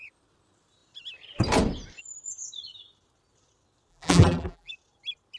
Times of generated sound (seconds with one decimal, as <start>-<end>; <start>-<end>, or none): 3.9-4.7